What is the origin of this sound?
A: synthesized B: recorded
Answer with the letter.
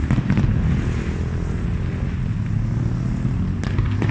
B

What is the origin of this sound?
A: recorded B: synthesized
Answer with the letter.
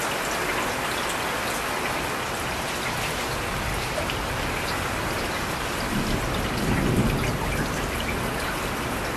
A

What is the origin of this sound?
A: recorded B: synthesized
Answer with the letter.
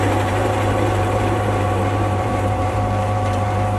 B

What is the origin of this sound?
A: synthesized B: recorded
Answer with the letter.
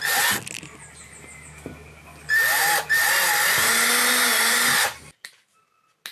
B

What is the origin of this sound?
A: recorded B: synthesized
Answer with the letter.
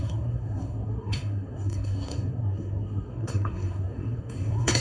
B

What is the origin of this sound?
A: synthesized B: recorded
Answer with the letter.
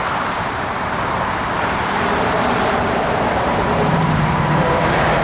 A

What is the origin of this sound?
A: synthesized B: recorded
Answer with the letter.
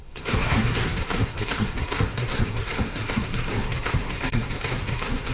A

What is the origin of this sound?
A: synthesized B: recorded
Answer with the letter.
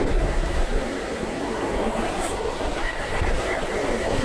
A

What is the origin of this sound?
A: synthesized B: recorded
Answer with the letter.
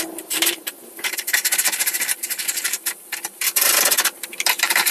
A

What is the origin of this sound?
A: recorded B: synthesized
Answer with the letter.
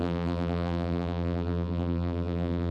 B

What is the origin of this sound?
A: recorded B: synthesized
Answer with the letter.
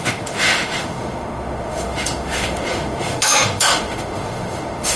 B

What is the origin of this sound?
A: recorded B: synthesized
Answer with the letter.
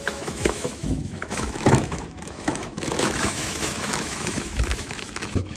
B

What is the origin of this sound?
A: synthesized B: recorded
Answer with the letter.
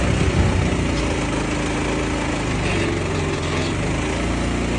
B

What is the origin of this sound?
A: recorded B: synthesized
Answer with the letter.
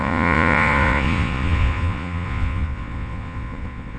B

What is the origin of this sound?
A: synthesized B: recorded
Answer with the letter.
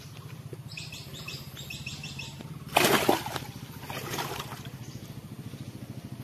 B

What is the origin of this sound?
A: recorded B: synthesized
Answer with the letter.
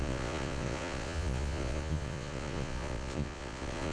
B